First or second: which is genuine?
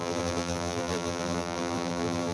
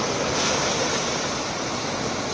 second